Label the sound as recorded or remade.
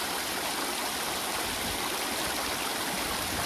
recorded